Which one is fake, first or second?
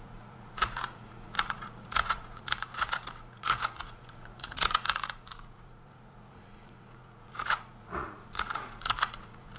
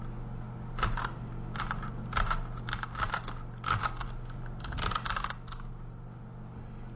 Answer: first